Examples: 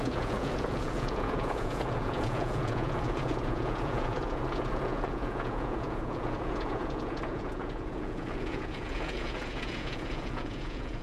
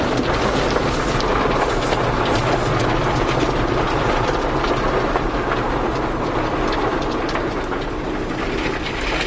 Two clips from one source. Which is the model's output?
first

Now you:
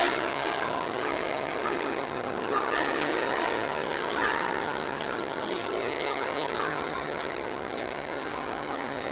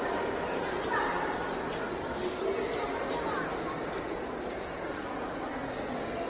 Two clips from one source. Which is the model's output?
first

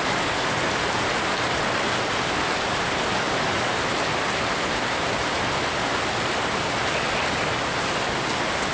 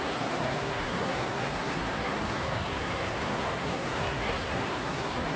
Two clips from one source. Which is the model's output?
second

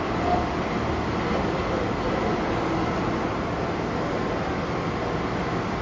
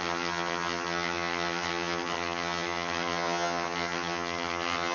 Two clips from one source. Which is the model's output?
second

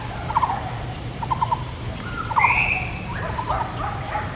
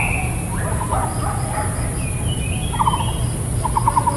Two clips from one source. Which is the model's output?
first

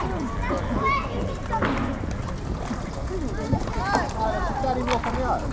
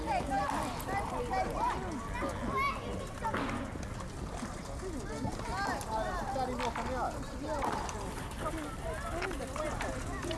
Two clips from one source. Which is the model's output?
first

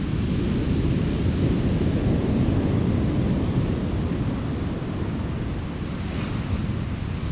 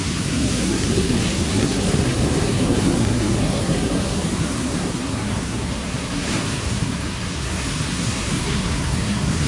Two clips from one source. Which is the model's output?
second